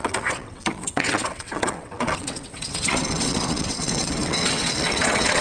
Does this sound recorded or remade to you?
remade